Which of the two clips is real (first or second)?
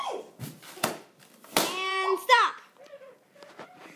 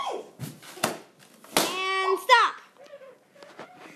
second